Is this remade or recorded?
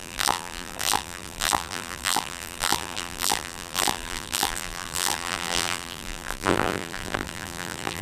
remade